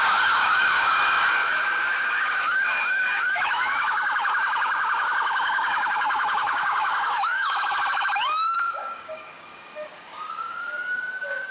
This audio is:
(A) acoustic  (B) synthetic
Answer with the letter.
B